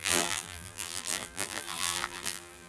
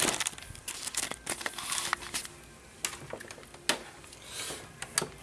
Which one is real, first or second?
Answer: second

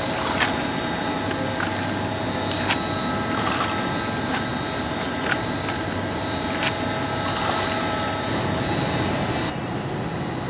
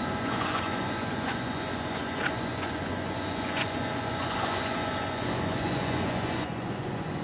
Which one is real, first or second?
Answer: first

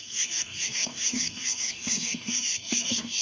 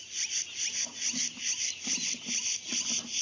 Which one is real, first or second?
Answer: second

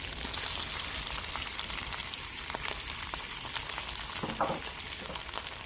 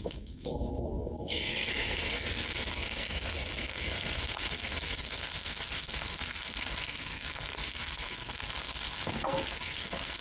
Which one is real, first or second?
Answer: first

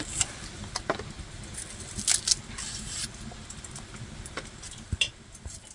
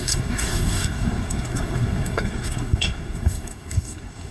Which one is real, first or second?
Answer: first